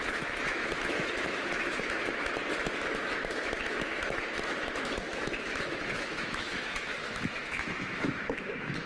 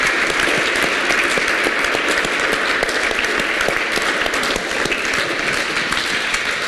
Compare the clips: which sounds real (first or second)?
second